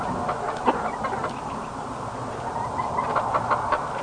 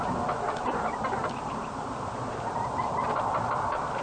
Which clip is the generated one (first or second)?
second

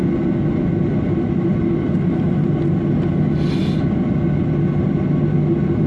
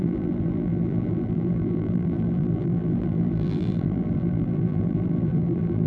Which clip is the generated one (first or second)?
second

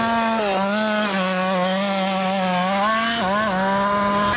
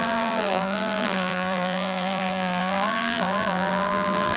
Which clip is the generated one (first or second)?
second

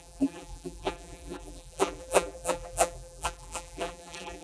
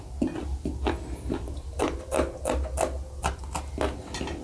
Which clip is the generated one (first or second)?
first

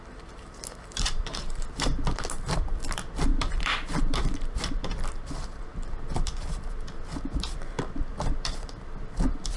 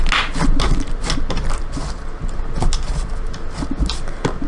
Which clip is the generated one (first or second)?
first